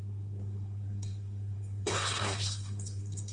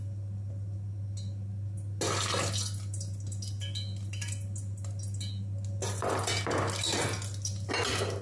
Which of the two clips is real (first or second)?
second